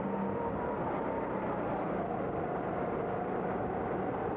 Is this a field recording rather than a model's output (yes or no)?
yes